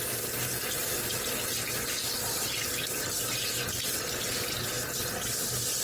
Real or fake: real